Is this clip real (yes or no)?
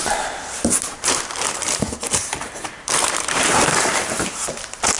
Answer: no